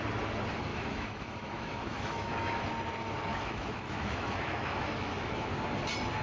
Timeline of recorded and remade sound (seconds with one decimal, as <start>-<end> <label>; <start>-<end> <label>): 0.0-0.7 recorded; 0.7-2.6 remade; 2.6-3.3 recorded; 3.3-5.5 remade; 5.5-6.2 recorded